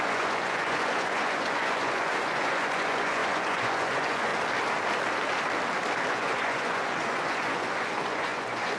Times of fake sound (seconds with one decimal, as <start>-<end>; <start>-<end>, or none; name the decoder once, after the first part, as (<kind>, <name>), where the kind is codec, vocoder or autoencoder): 0.0-4.3 (vocoder, Vocos); 6.1-8.8